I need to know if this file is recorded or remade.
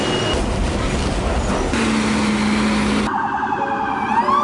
recorded